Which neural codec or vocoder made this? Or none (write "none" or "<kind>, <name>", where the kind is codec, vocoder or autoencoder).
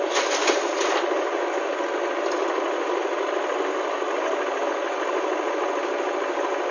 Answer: none